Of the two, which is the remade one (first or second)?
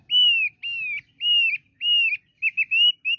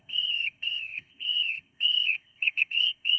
second